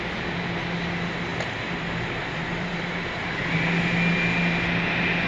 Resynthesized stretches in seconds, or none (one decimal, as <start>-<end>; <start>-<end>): 1.3-3.5